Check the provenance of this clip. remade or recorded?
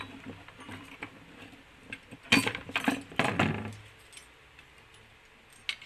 recorded